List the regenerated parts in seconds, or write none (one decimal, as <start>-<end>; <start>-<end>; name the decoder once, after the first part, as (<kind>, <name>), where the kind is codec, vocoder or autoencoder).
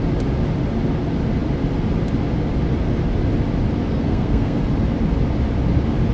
3.9-4.6 (codec, SNAC)